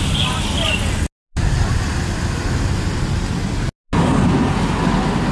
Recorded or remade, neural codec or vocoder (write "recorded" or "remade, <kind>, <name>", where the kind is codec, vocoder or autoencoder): recorded